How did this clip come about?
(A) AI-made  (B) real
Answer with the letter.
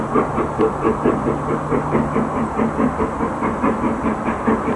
B